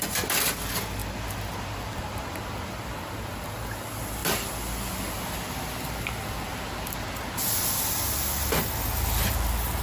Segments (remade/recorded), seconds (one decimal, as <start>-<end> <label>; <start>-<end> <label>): 0.0-9.8 recorded